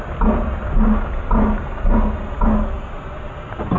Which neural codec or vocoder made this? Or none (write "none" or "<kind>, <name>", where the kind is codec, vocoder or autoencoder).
none